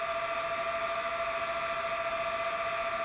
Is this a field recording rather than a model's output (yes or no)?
yes